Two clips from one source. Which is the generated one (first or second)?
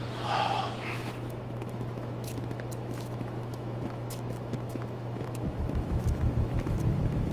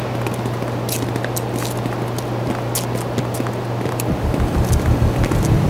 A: first